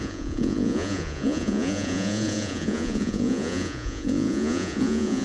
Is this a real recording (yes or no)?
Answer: no